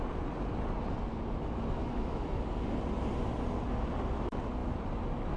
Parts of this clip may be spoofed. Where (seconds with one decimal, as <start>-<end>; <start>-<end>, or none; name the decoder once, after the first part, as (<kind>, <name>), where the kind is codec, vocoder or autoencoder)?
1.8-2.4 (autoencoder, DAC-VAE)

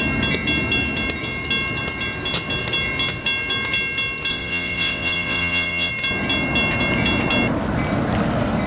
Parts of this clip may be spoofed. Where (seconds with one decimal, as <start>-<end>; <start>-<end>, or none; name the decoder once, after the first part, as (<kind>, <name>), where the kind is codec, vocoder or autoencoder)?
4.3-5.9 (vocoder, WaveNeXt)

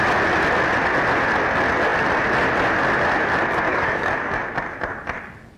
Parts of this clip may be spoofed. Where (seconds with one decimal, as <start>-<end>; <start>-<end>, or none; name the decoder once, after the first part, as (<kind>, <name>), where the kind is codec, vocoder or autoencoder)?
3.7-4.4 (codec, DAC)

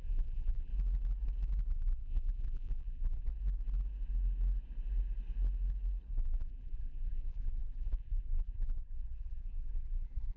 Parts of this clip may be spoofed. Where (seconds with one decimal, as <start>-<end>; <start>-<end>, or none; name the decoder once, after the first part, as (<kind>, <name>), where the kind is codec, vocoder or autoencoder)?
0.0-0.7 (vocoder, BigVGAN v2); 1.7-3.3; 6.1-10.4

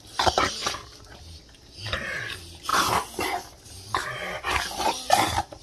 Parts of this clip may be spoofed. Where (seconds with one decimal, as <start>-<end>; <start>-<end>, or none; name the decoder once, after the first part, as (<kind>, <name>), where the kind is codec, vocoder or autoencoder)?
0.6-1.2 (vocoder, BigVGAN v2); 2.7-5.6